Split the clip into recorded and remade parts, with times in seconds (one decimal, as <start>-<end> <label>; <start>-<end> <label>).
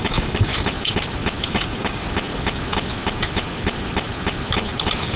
0.0-0.5 remade; 0.5-1.5 recorded; 1.5-2.0 remade; 2.0-5.2 recorded